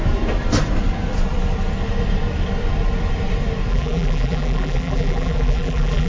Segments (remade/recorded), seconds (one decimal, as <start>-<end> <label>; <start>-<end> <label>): 0.0-3.7 recorded; 3.7-6.1 remade